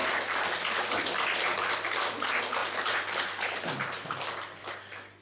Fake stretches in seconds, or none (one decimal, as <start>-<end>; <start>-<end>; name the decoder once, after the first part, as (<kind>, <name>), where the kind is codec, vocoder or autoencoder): 0.0-1.6 (vocoder, BigVGAN v2); 2.6-4.7